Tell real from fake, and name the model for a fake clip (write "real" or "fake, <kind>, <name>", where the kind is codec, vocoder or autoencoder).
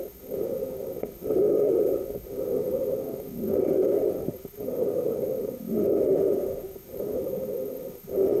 fake, autoencoder, DAC-VAE